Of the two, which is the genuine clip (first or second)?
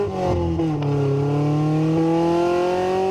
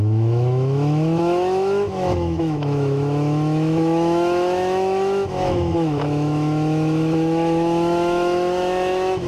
first